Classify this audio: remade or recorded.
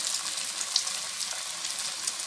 recorded